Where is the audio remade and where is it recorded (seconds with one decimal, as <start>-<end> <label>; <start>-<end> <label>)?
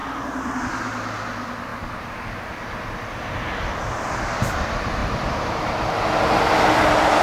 0.0-0.6 remade; 0.6-5.0 recorded; 5.0-5.8 remade; 5.8-7.2 recorded